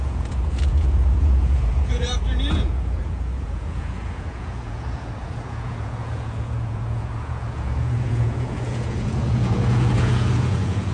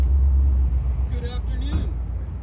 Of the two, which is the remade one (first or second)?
first